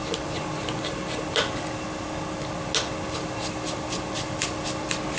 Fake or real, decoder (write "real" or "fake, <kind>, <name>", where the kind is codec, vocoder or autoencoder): real